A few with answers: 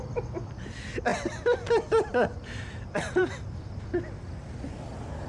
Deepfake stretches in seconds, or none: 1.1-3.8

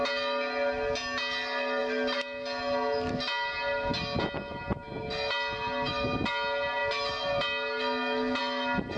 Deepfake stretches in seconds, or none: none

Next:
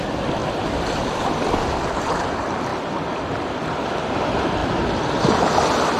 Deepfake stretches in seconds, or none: 0.0-2.7; 3.6-4.6; 5.5-6.0

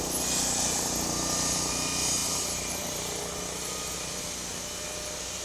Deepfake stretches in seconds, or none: 2.2-3.0